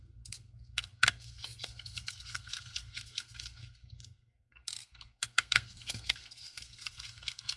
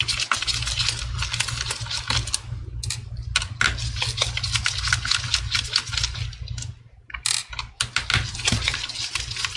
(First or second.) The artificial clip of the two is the first